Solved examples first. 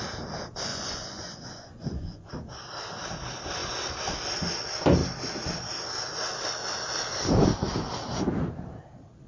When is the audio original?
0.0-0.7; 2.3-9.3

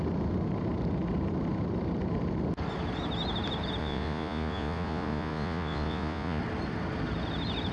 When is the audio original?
0.0-3.8; 6.4-7.7

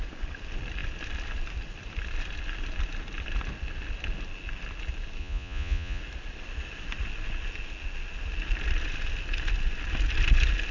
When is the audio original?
0.0-5.2; 6.0-10.7

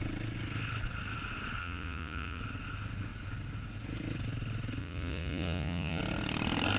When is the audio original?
0.0-1.6; 2.4-4.8; 6.0-6.8

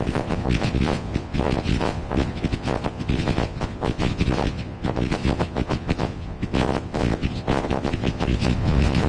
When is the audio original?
none